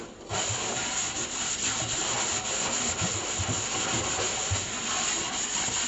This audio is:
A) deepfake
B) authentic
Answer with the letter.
B